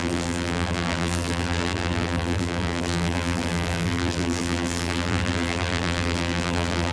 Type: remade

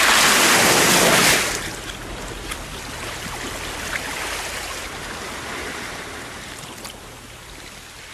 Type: recorded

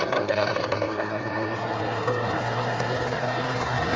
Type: remade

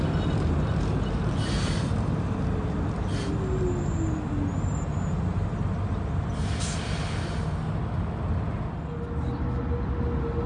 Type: recorded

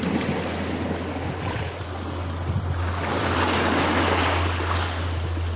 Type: recorded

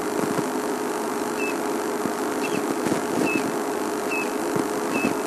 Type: recorded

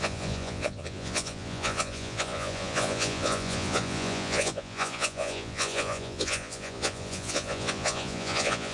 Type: remade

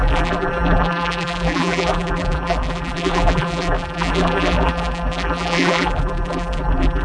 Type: remade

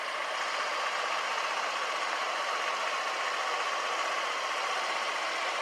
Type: recorded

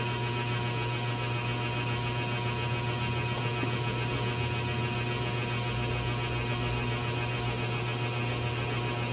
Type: recorded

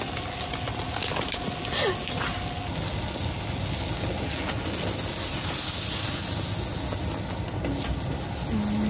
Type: recorded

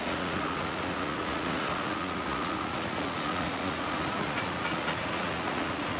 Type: remade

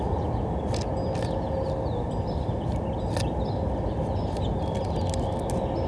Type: recorded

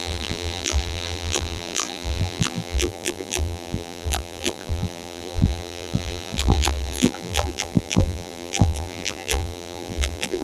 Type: remade